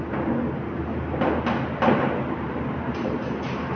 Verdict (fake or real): real